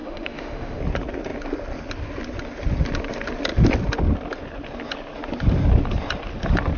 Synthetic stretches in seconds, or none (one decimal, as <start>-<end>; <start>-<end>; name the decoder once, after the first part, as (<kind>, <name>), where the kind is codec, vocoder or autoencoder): 0.0-0.8 (autoencoder, DAC-VAE)